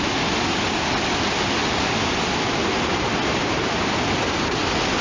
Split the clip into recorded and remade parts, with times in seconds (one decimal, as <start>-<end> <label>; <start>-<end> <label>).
0.0-5.0 recorded